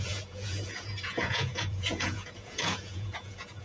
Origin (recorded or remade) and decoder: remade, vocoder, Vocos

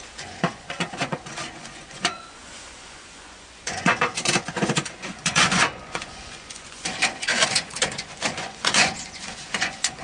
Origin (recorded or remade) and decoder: remade, vocoder, Vocos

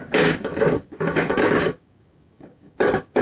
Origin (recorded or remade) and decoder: remade, codec, DAC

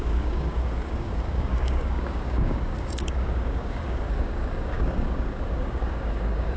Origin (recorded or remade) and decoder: remade, codec, DAC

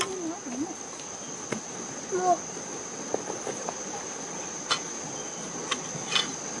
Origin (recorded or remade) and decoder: recorded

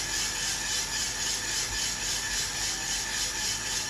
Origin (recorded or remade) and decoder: recorded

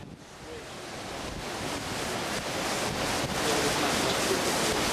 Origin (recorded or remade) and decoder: recorded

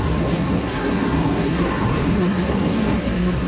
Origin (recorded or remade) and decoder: remade, codec, SNAC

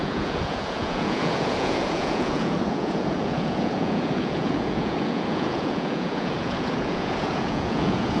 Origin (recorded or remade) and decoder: remade, vocoder, Vocos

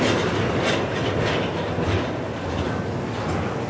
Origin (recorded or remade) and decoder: recorded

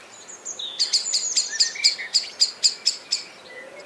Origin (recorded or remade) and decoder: recorded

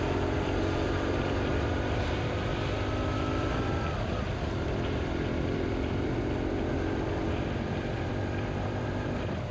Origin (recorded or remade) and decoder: recorded